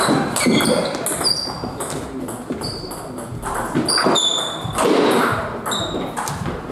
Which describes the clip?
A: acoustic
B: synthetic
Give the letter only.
A